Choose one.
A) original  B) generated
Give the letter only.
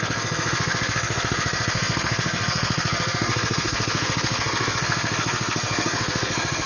B